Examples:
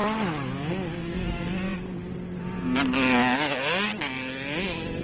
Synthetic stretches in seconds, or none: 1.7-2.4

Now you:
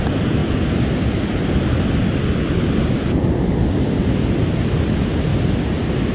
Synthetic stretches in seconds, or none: none

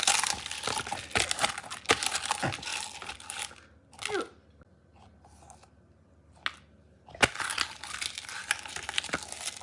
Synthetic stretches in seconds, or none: none

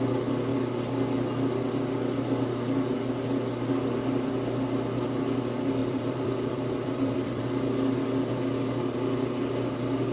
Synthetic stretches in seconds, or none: 5.8-7.4

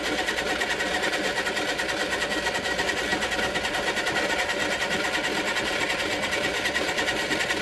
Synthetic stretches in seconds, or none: none

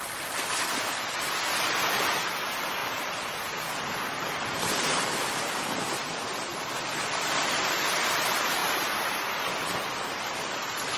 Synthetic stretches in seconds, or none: 0.0-6.5; 8.2-11.0

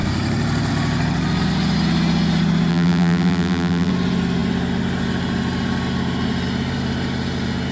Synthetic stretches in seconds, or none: 2.7-3.9

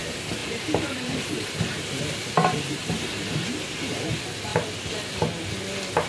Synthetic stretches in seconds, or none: 0.4-4.1